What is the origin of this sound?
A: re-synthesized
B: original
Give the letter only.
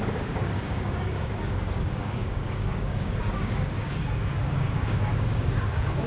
A